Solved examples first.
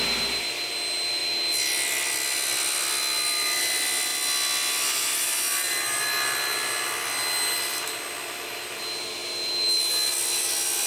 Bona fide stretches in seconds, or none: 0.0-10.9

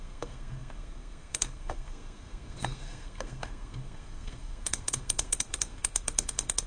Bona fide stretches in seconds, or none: none

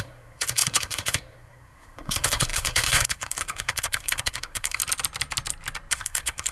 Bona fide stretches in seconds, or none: 4.8-5.9

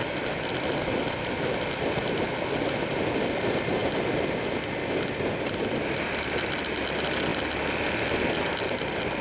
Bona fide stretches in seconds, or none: 0.0-9.2

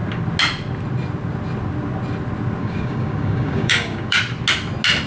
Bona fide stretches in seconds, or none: 0.0-2.6; 4.2-5.1

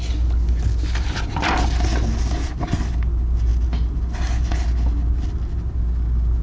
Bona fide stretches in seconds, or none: 0.0-6.4

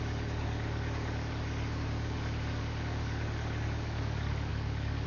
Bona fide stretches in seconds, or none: none